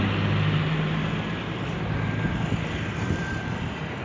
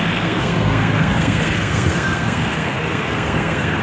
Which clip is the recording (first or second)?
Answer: first